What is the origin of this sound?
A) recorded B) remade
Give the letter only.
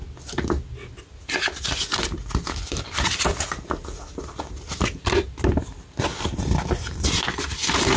A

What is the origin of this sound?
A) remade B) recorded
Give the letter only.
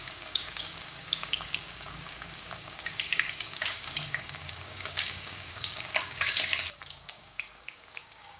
A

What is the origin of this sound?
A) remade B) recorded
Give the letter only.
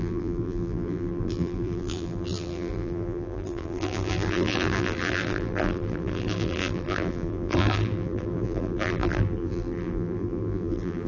A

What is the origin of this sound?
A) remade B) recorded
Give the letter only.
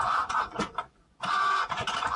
A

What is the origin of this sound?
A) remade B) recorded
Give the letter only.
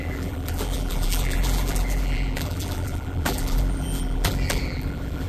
A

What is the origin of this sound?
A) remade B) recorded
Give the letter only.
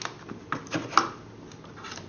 B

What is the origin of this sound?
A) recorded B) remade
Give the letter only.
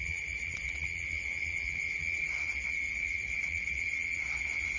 B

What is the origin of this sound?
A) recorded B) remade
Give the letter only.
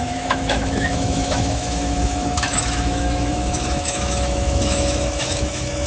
B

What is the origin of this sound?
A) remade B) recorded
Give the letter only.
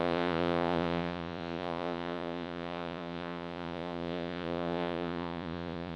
A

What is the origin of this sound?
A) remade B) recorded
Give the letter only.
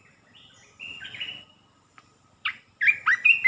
B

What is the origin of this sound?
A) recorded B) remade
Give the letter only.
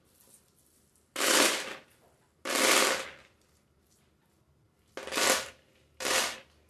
A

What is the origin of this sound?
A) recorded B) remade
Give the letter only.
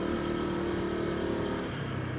A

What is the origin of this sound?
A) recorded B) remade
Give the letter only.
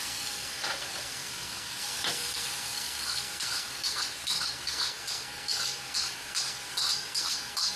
B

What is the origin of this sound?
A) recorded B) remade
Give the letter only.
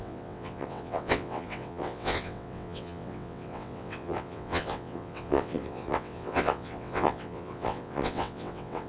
B